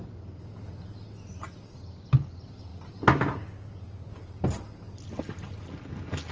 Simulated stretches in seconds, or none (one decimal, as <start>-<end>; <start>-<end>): none